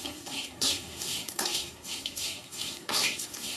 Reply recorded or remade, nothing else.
remade